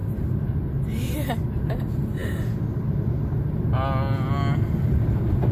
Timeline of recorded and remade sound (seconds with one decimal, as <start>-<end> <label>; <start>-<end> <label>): 0.0-5.5 recorded